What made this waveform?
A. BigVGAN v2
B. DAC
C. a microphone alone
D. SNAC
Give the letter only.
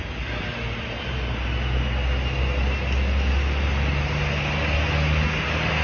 C